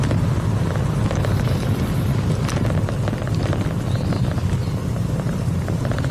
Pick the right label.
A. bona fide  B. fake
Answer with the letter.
A